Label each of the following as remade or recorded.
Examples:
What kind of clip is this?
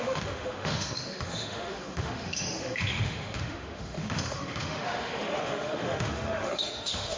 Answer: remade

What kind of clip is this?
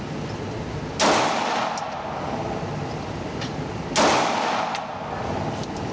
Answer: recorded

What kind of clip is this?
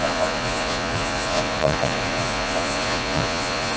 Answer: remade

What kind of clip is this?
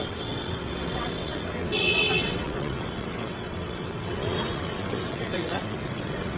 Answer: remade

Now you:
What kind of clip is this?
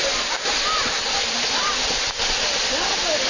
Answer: recorded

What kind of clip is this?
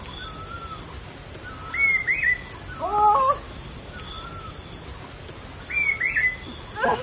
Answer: recorded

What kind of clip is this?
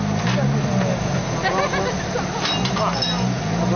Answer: recorded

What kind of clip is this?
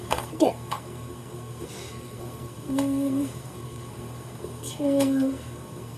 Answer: remade